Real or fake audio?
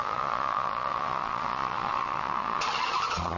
fake